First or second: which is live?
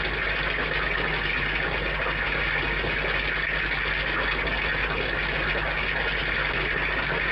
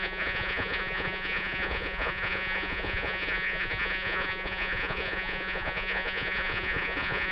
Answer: first